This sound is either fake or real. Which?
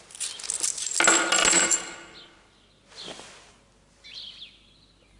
real